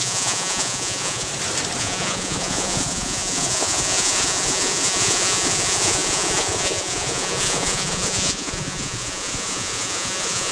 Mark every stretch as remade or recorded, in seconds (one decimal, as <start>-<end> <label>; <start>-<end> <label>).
0.0-1.3 remade; 1.3-1.8 recorded; 1.8-10.5 remade